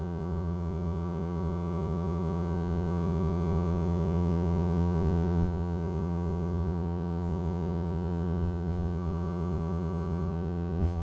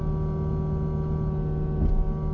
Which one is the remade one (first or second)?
first